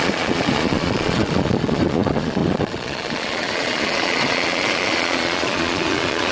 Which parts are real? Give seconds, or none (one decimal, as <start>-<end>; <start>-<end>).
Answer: none